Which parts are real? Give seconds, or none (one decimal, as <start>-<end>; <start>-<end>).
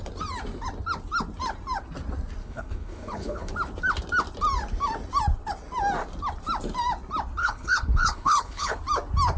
0.0-2.4; 3.5-7.4; 8.8-9.4